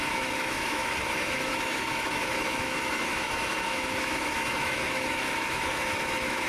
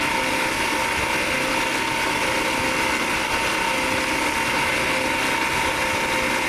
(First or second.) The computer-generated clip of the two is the first